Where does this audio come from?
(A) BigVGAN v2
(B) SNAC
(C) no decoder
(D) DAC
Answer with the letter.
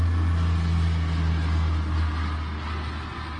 C